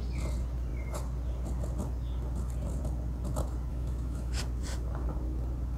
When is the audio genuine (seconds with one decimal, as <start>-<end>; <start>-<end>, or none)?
0.0-3.7; 4.4-5.8